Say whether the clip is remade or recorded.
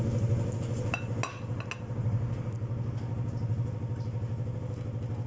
recorded